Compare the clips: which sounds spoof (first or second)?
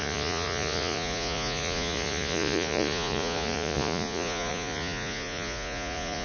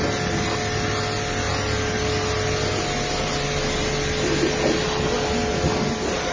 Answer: first